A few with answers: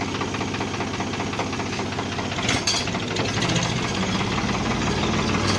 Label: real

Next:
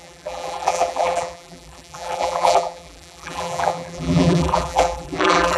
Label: fake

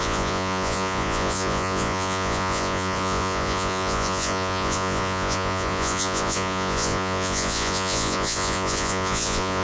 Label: fake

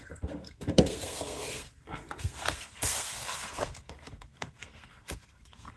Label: fake